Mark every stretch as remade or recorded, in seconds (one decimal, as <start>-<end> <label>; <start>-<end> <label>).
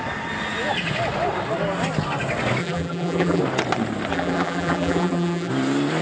0.0-2.6 recorded; 2.6-3.4 remade; 3.4-4.1 recorded; 4.1-5.5 remade; 5.5-6.0 recorded